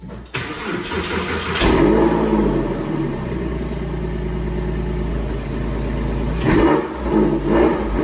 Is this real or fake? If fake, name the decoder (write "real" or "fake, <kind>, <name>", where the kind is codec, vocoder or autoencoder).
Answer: real